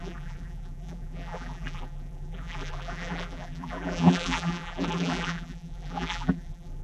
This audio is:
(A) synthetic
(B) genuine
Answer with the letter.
A